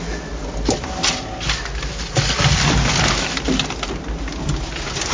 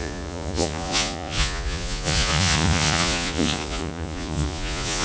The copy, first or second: second